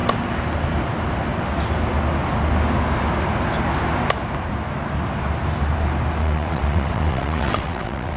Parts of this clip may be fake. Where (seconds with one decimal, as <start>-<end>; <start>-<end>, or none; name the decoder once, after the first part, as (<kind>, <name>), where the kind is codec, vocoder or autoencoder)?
6.2-8.2 (vocoder, WaveNeXt)